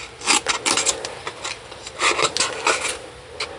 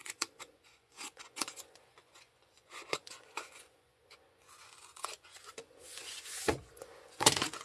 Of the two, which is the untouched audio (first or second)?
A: first